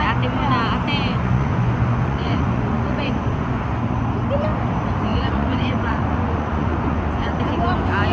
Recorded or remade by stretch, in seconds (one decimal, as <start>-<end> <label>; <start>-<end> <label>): 0.0-1.1 recorded; 1.1-4.0 remade; 4.0-5.1 recorded; 5.1-7.5 remade; 7.5-8.1 recorded